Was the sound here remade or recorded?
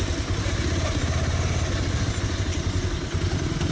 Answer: recorded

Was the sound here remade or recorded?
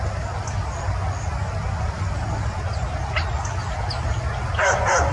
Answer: recorded